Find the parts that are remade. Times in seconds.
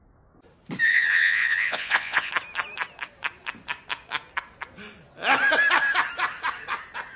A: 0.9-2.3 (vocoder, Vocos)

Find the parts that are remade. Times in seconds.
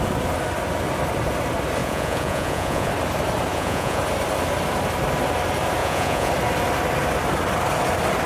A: 1.8-2.9 (vocoder, Vocos); 3.5-4.0; 5.8-6.3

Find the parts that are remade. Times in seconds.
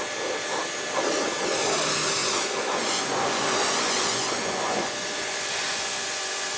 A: 2.2-6.6 (vocoder, Vocos)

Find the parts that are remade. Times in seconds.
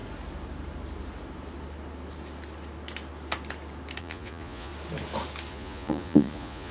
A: 4.0-4.7 (vocoder, Vocos); 5.5-6.7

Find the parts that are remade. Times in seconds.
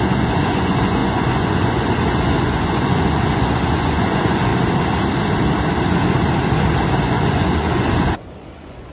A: 0.0-4.5 (vocoder, Vocos); 7.0-8.9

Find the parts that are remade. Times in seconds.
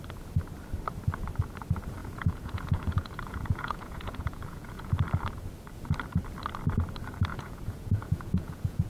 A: 2.0-4.9 (vocoder, Vocos); 7.3-8.9